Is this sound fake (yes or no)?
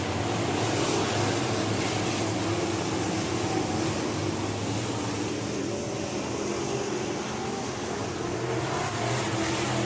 no